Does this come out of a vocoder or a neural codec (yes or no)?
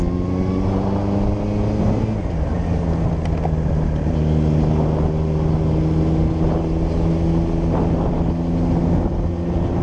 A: no